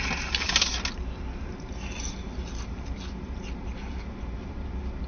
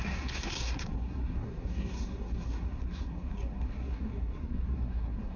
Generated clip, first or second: second